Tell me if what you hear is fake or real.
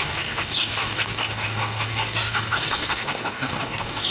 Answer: fake